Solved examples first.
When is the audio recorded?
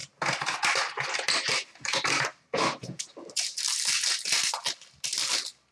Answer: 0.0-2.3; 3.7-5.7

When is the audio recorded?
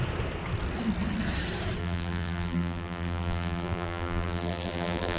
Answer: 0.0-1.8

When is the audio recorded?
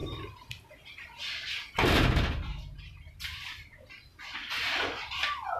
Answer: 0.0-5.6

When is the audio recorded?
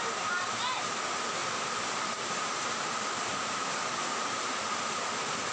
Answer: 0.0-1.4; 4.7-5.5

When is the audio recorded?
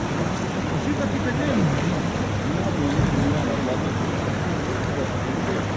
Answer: 0.0-5.8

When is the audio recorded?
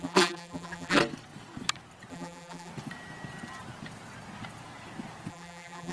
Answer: 1.0-2.1; 2.7-5.3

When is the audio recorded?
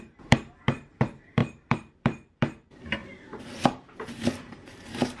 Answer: none